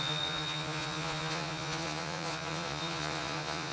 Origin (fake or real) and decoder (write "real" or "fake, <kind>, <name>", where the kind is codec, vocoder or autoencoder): fake, vocoder, Vocos